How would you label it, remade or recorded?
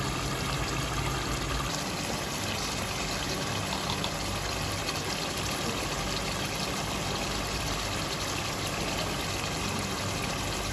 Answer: recorded